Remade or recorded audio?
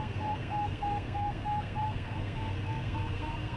remade